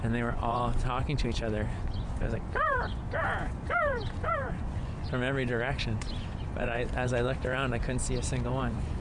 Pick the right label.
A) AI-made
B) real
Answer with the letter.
A